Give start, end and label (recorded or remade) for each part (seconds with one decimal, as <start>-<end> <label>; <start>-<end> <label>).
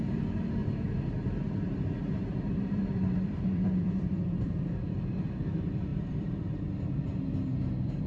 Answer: 0.0-0.6 recorded; 0.6-5.3 remade; 5.3-5.9 recorded; 5.9-6.5 remade; 6.5-8.1 recorded